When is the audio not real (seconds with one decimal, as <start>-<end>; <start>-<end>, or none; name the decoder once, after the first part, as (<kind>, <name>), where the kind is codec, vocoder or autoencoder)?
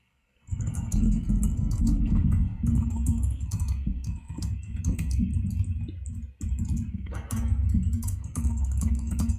0.0-5.3 (codec, SNAC); 6.9-9.4